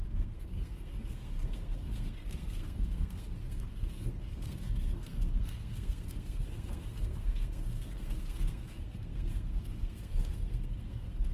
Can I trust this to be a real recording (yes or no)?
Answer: no